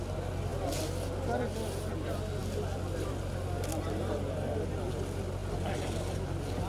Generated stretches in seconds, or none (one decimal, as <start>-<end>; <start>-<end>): none